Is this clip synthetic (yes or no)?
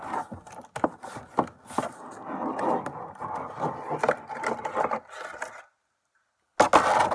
no